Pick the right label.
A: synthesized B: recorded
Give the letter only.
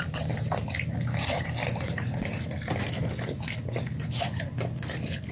B